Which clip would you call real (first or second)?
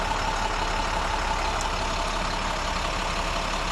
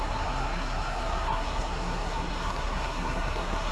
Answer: first